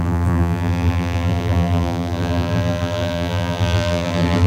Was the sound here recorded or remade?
remade